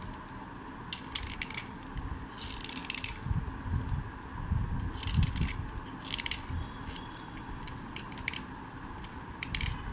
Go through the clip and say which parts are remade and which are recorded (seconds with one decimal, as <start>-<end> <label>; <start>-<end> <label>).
0.0-9.9 recorded